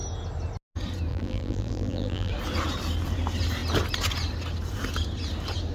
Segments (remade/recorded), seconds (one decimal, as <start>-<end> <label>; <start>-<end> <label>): 0.0-1.1 recorded; 1.1-2.3 remade; 2.3-5.7 recorded